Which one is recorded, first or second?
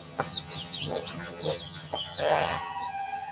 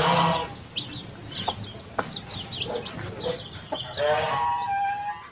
second